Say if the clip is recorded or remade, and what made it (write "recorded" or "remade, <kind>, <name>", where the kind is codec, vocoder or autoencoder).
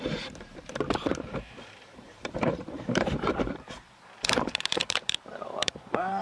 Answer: remade, vocoder, BigVGAN v2